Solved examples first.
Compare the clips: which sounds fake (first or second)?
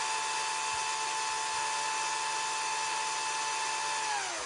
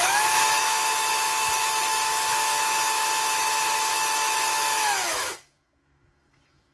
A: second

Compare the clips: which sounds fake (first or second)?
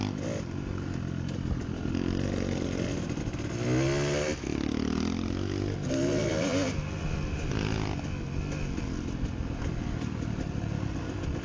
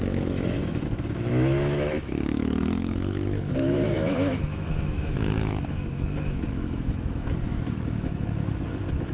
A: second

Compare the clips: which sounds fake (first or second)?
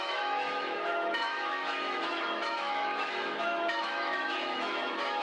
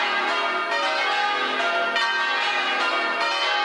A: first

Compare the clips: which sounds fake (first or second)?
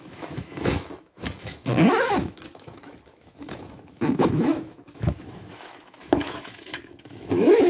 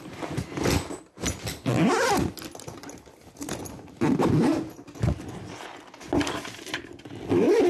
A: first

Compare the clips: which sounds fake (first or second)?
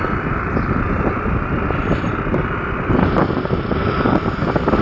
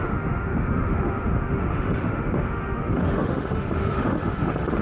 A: second